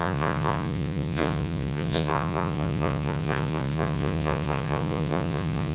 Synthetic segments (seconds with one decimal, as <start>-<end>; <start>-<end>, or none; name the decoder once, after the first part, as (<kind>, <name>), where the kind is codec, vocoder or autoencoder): 0.0-5.7 (vocoder, Vocos)